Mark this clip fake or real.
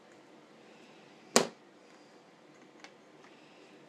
real